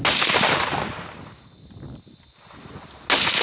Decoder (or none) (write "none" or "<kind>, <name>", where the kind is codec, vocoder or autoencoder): none